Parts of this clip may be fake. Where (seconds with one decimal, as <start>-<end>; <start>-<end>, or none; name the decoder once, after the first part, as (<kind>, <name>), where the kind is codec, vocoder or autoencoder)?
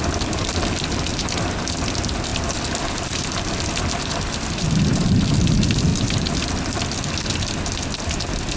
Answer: 1.1-1.6 (vocoder, BigVGAN v2); 2.3-4.3; 5.9-7.1